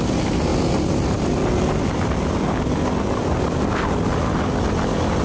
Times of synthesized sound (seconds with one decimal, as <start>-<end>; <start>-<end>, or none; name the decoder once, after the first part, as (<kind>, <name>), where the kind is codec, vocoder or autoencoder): none